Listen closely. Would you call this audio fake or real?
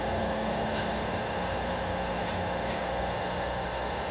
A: fake